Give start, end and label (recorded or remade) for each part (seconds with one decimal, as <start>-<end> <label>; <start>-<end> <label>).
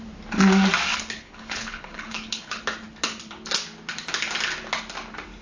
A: 0.0-0.9 recorded; 0.9-2.6 remade; 2.6-5.4 recorded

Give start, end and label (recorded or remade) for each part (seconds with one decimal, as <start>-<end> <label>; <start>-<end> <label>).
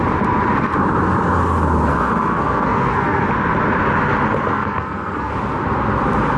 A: 0.0-1.9 recorded; 1.9-3.2 remade; 3.2-4.5 recorded; 4.5-5.3 remade; 5.3-6.4 recorded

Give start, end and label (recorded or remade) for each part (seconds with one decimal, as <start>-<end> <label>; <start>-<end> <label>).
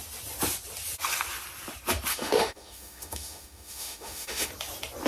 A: 0.0-2.1 recorded; 2.1-4.5 remade; 4.5-5.1 recorded